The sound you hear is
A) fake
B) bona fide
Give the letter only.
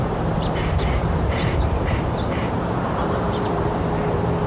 A